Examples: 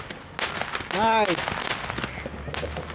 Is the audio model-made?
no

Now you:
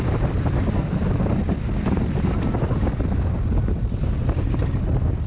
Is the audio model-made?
no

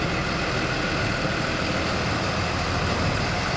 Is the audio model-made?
no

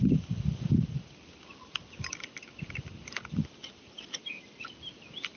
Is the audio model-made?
no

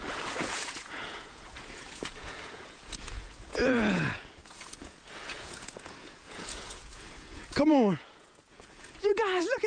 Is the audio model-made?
yes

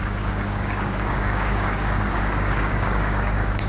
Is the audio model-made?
yes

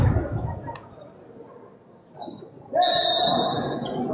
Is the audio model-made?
no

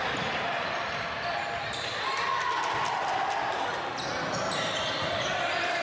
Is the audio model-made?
no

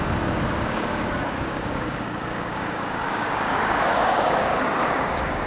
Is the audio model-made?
yes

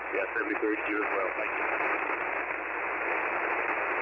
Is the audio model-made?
no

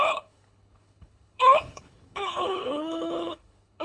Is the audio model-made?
yes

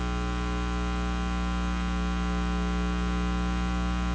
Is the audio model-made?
no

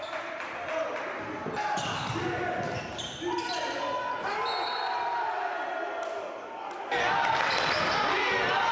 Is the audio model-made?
no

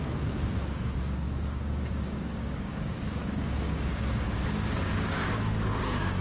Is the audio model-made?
yes